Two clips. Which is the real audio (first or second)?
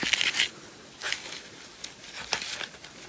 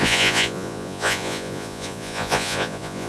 first